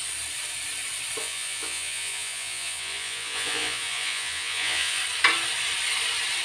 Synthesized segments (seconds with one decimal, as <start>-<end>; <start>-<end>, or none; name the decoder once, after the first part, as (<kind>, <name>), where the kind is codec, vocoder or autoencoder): 1.2-5.0 (vocoder, Vocos)